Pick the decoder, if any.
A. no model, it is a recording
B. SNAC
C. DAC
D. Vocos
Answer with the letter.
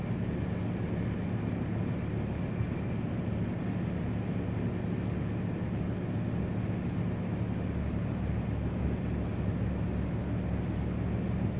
A